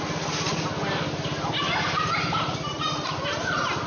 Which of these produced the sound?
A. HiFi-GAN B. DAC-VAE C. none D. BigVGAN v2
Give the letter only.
C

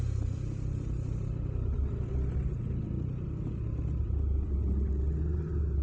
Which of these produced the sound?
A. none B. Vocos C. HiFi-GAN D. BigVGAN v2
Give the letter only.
A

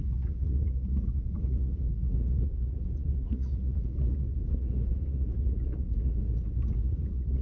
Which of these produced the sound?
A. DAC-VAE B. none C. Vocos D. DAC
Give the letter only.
C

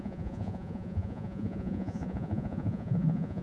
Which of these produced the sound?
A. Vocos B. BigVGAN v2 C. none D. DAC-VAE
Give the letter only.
A